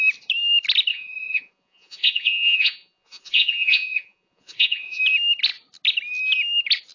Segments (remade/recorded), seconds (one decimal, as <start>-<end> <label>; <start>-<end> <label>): 0.0-0.9 recorded; 0.9-5.0 remade; 5.0-6.9 recorded

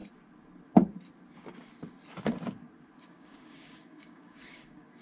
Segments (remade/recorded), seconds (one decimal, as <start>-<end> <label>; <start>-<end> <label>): 0.0-3.0 recorded; 3.0-5.0 remade

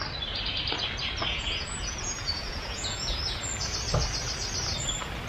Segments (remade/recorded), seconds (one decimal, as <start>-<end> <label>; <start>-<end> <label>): 0.0-1.3 recorded; 1.3-3.2 remade; 3.2-5.3 recorded

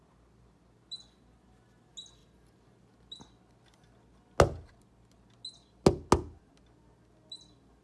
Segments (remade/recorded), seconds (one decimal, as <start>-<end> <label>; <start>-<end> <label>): 0.0-7.8 recorded

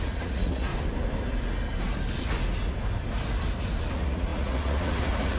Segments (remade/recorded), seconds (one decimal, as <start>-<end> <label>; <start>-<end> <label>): 0.0-0.7 remade; 0.7-3.9 recorded; 3.9-5.4 remade